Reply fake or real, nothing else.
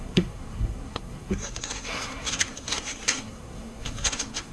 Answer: fake